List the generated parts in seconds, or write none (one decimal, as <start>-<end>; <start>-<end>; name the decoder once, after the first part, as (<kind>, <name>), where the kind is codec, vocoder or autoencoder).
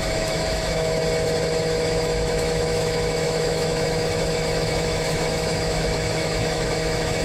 0.0-1.0 (autoencoder, DAC-VAE); 1.6-7.2